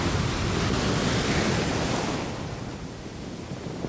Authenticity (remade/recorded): recorded